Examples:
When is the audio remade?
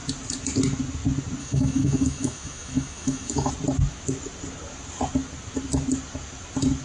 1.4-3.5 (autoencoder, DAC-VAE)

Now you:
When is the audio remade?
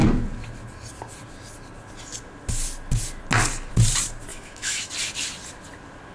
4.3-4.9 (autoencoder, DAC-VAE)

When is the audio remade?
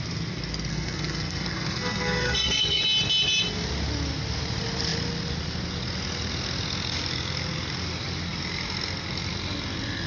0.7-2.8 (codec, SNAC)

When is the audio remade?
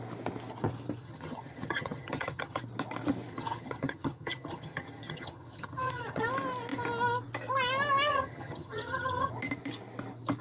1.0-2.6 (vocoder, HiFi-GAN); 3.3-6.2; 8.1-9.3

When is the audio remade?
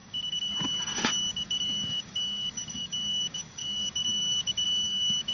0.0-5.3 (codec, DAC)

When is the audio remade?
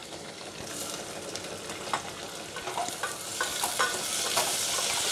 0.0-0.5 (codec, DAC)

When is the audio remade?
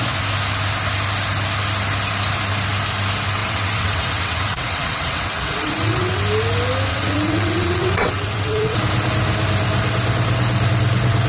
3.4-6.2 (vocoder, WaveNeXt); 6.9-8.8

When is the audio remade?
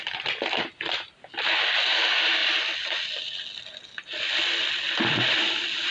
none